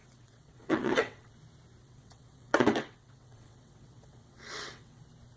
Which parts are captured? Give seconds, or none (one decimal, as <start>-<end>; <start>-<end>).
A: 1.3-1.8; 5.0-5.4